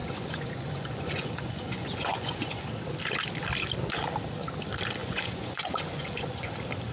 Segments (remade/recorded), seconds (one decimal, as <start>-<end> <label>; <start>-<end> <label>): 0.0-2.6 remade; 2.6-5.0 recorded; 5.0-6.5 remade; 6.5-6.9 recorded